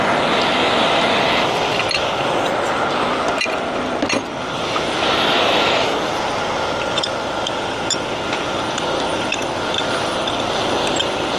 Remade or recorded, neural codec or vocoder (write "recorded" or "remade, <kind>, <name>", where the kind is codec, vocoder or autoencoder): recorded